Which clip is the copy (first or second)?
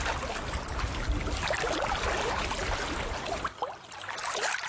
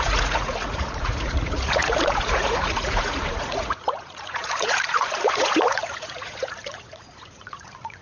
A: second